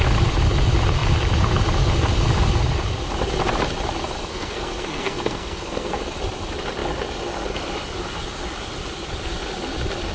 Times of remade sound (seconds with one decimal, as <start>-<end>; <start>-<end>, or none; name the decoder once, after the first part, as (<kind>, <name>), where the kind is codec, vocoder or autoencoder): 4.3-6.0 (codec, SNAC)